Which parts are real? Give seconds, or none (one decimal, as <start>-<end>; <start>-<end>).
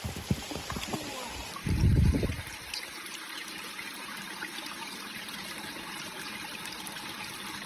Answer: 0.0-1.6; 6.0-7.7